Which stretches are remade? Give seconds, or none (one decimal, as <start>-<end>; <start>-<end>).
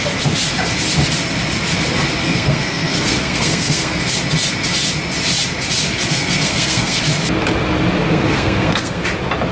2.2-4.0; 6.1-7.0; 8.0-9.0